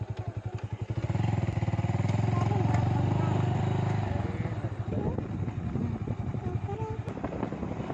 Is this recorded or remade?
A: recorded